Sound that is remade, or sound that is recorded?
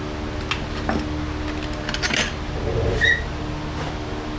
recorded